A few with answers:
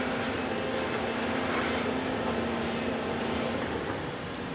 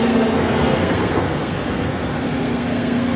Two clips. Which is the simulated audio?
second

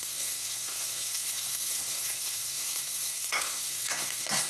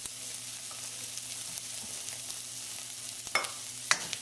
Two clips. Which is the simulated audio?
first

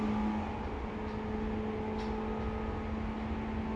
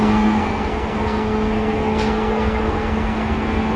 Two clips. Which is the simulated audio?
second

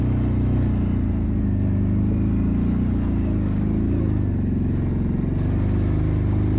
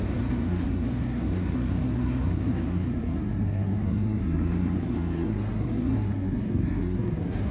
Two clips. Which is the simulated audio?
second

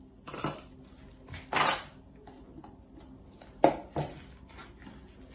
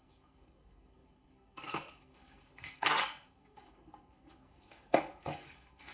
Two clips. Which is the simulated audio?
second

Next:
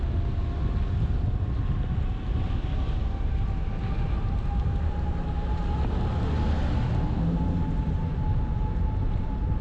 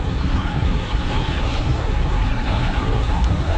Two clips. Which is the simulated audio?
second